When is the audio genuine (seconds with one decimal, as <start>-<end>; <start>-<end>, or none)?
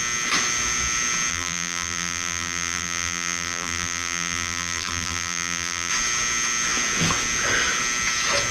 0.0-1.3; 5.9-8.5